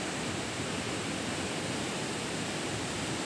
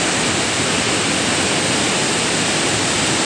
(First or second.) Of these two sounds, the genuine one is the second